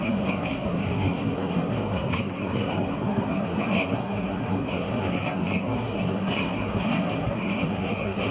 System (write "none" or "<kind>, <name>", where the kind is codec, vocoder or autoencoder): codec, SNAC